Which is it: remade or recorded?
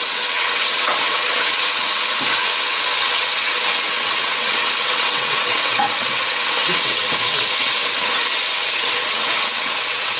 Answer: remade